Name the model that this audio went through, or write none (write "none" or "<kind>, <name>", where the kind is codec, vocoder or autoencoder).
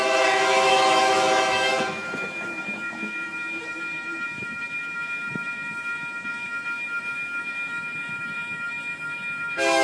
autoencoder, DAC-VAE